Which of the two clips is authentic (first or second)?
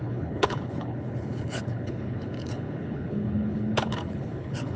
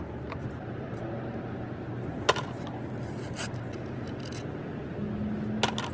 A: second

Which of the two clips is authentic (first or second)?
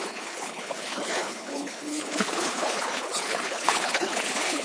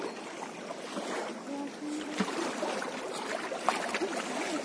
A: second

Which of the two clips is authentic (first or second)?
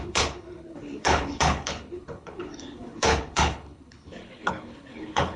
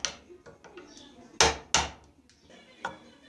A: second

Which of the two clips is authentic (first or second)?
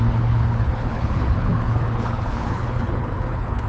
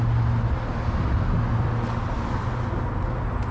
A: second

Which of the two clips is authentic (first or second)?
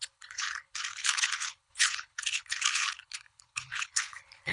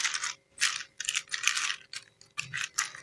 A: second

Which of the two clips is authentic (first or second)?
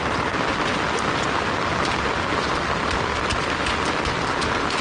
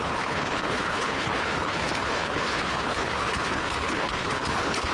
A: first